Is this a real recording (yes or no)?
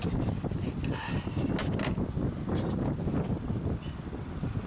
yes